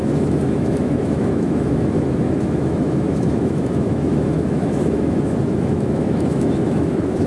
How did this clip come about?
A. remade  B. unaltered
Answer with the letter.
A